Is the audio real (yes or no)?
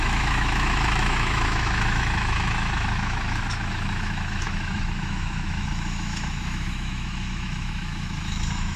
no